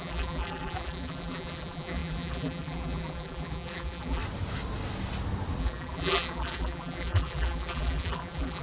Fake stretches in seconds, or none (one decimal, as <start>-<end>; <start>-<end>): 0.0-4.2; 5.6-8.6

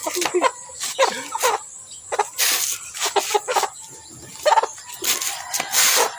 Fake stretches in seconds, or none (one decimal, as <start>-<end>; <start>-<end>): none